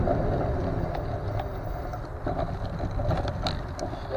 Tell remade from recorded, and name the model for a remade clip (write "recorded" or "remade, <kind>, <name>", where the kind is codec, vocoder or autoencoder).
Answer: recorded